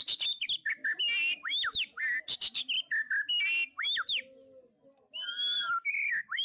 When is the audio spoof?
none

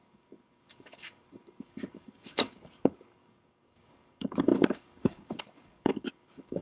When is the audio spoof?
0.0-6.6 (codec, DAC)

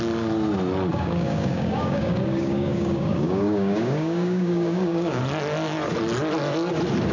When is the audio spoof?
0.9-5.2 (codec, DAC)